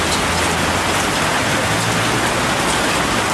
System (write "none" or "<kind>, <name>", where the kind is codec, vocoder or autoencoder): none